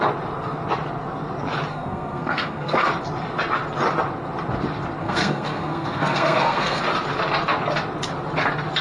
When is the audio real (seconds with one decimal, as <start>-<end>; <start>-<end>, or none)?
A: 0.0-1.7; 2.8-5.0; 6.8-8.8